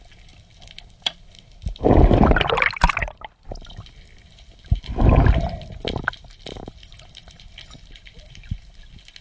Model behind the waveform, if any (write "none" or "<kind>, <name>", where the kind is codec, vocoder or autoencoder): none